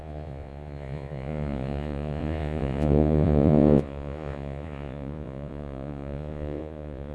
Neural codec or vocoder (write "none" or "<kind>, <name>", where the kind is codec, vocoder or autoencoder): vocoder, Vocos